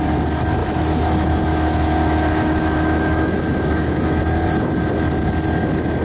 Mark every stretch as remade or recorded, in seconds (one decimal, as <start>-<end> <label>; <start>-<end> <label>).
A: 0.0-0.6 recorded; 0.6-4.2 remade; 4.2-6.0 recorded